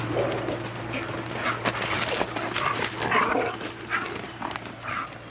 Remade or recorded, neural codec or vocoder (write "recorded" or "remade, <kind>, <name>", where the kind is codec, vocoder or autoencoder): recorded